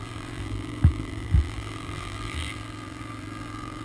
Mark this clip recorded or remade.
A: remade